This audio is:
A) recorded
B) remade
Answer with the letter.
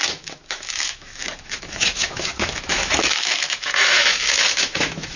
B